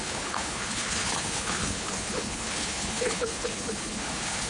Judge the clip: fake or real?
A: fake